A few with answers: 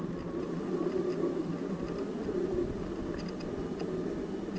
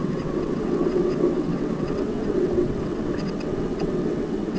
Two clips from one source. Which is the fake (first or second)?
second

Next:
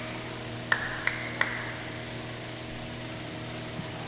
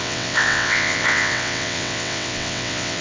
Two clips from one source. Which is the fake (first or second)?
second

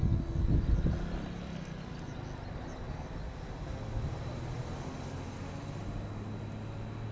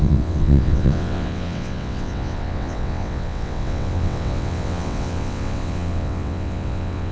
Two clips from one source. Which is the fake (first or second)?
second